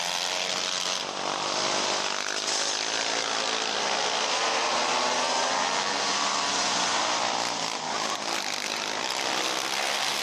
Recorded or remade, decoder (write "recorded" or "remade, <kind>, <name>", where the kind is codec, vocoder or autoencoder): recorded